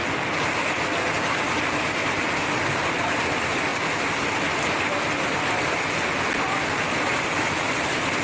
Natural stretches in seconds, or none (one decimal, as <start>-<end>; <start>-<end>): 0.0-8.2